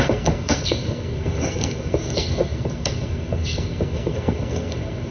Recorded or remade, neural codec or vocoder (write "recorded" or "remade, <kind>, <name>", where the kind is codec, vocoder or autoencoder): remade, codec, SNAC